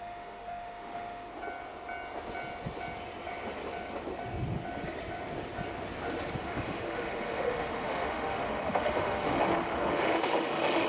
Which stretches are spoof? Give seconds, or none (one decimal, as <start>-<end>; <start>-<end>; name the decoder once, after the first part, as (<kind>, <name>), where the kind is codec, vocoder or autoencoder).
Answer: 0.0-1.3 (autoencoder, DAC-VAE); 6.3-10.9